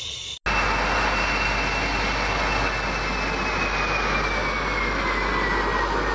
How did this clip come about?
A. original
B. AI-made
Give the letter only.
A